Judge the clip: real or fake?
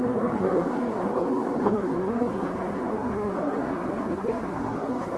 fake